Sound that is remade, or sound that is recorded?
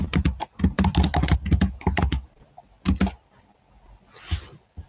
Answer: recorded